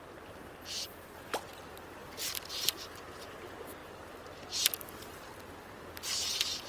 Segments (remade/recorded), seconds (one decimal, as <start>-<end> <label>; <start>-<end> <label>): 0.0-2.0 recorded; 2.0-2.7 remade; 2.7-6.7 recorded